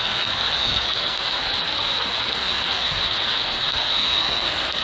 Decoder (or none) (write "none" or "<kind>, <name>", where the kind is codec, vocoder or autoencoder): codec, SNAC